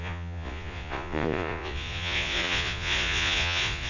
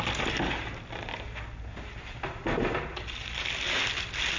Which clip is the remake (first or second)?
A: first